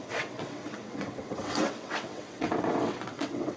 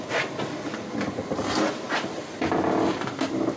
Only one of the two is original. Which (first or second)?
second